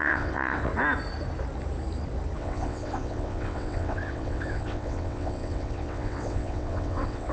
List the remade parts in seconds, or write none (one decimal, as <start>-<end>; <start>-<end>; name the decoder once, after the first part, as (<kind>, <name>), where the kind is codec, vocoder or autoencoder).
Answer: 0.0-0.7 (vocoder, WaveNeXt); 2.4-7.3